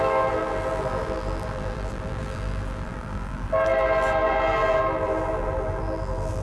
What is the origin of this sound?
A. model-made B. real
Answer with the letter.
A